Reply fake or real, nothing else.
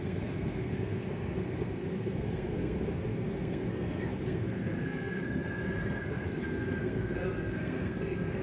fake